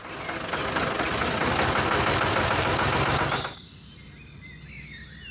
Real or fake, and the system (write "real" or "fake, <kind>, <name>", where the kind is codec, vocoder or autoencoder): real